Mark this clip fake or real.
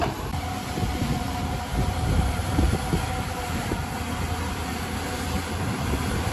fake